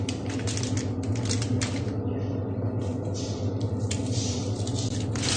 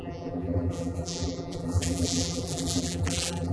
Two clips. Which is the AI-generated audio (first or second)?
second